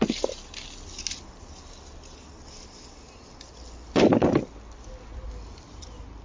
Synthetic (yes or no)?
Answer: no